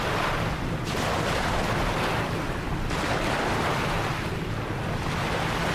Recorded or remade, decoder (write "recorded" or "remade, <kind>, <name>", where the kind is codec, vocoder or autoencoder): recorded